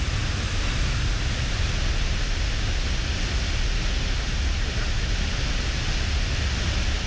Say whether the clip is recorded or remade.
recorded